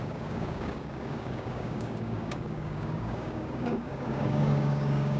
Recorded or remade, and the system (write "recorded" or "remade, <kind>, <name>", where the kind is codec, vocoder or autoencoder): remade, codec, DAC